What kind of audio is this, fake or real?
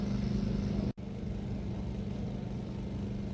real